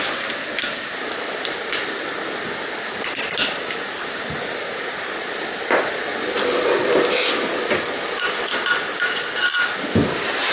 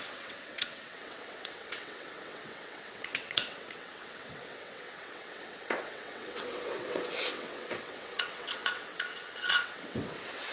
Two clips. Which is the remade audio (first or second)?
second